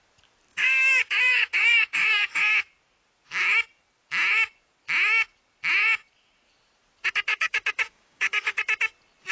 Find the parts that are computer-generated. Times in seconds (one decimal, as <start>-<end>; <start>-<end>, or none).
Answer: 0.5-2.4; 7.3-8.6